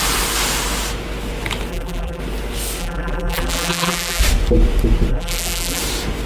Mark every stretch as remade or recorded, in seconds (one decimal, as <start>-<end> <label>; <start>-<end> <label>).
0.0-1.7 recorded; 1.7-2.2 remade; 2.2-2.8 recorded; 2.8-4.2 remade; 4.2-5.1 recorded; 5.1-5.8 remade; 5.8-6.3 recorded